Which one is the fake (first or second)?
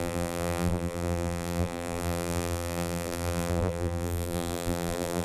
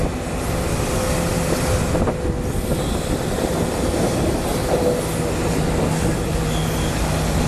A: first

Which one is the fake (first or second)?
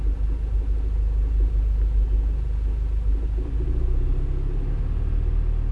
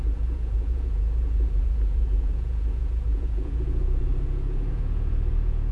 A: second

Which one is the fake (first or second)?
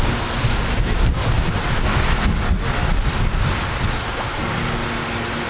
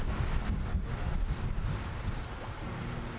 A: second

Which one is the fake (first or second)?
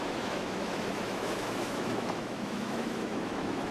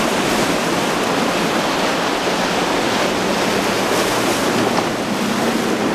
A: first